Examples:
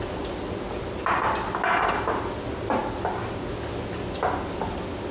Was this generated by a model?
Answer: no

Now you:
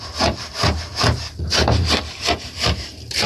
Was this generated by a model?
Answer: yes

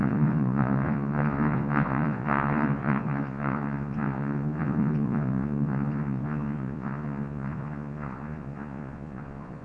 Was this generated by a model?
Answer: yes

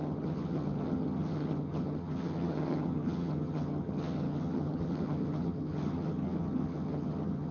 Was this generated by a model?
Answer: yes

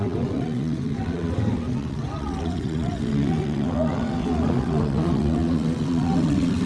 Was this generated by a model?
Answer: yes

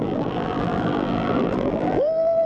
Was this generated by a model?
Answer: yes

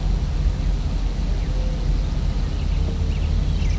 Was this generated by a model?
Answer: no